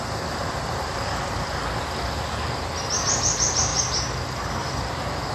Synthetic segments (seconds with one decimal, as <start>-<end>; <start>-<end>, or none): 0.4-1.6